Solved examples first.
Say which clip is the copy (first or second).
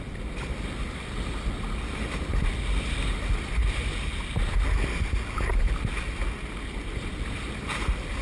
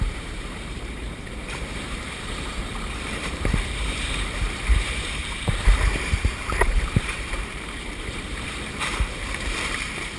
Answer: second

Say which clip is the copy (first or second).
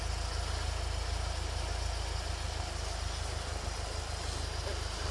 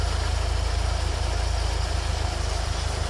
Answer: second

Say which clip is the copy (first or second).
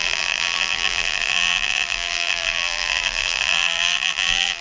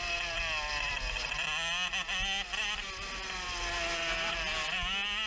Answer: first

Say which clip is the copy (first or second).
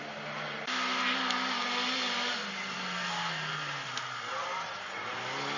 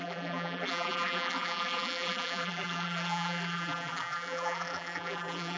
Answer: second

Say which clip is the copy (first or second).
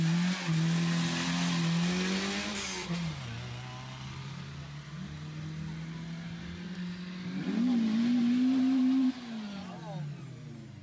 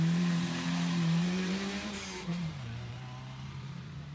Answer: second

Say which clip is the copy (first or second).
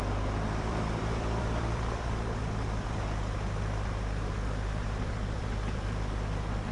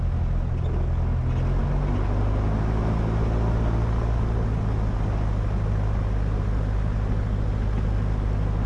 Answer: first